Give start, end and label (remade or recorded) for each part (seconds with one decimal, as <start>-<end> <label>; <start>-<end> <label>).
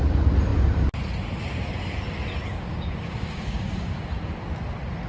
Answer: 0.0-2.7 recorded; 2.7-4.1 remade; 4.1-5.1 recorded